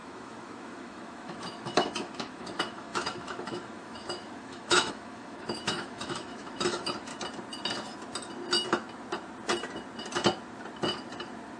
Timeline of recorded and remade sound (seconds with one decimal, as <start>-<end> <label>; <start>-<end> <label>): 0.0-7.1 remade; 7.1-11.6 recorded